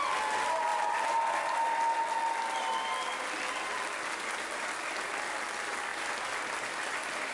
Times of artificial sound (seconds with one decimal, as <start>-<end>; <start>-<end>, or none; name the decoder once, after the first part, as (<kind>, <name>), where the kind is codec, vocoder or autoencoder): none